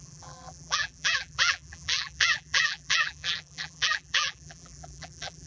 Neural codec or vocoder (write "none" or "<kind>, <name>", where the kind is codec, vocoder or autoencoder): vocoder, BigVGAN v2